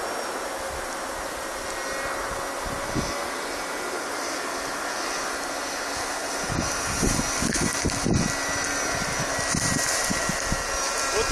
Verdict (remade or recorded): recorded